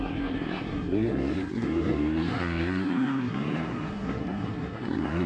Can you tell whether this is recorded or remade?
remade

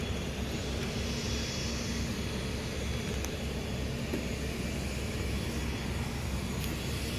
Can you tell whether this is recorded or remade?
recorded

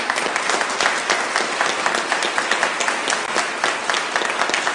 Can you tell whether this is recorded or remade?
recorded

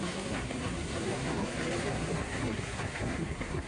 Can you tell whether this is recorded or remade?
remade